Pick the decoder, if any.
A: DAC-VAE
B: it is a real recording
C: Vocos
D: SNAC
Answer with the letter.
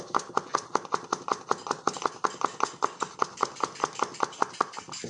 B